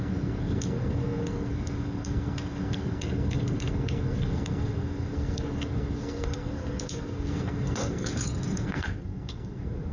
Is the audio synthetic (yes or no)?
yes